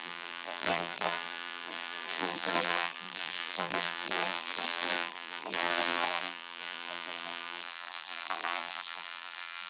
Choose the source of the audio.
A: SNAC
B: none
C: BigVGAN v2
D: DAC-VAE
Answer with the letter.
C